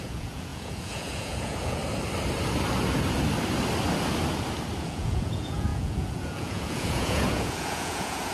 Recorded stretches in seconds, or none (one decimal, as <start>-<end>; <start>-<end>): 1.8-4.8